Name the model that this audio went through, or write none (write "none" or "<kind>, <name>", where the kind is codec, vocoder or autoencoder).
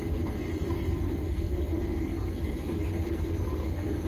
codec, SNAC